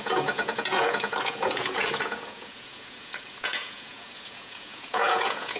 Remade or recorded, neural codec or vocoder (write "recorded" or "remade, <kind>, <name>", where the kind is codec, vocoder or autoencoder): remade, vocoder, Vocos